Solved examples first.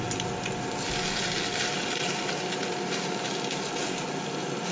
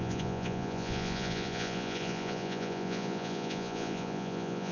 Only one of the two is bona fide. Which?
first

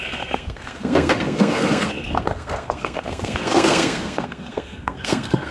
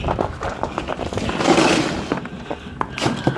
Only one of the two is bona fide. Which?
second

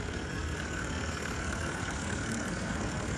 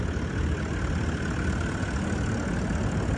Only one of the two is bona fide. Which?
second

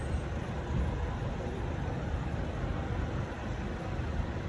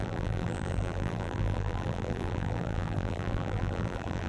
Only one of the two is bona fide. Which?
first